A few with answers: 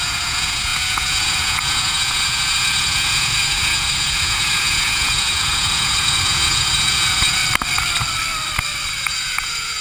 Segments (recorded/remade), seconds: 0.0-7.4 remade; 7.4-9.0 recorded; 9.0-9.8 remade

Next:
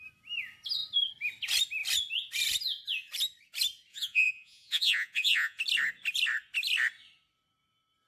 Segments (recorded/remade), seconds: 0.0-3.9 recorded; 3.9-5.6 remade; 5.6-8.1 recorded

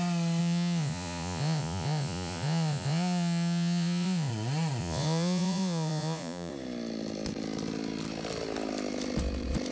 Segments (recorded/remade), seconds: 0.0-0.4 recorded; 0.4-4.3 remade; 4.3-4.8 recorded; 4.8-6.5 remade; 6.5-9.7 recorded